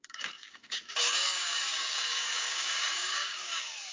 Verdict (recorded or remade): remade